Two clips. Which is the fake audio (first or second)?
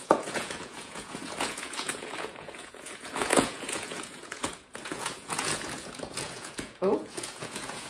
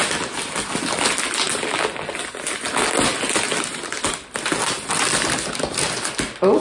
first